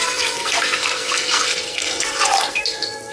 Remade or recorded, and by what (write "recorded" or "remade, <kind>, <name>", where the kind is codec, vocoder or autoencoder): remade, codec, SNAC